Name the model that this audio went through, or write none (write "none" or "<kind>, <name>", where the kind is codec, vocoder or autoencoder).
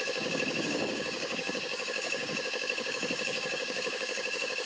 codec, DAC